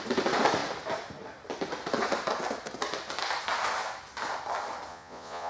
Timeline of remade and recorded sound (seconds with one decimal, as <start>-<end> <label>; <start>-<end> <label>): 0.0-4.9 recorded; 4.9-5.5 remade